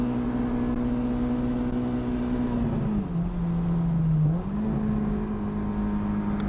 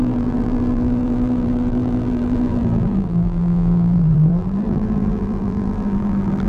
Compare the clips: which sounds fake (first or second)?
second